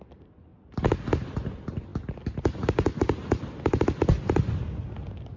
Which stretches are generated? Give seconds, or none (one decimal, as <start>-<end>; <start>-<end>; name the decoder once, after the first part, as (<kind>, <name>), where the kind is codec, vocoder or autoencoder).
none